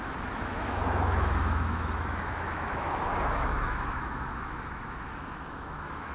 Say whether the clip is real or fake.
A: fake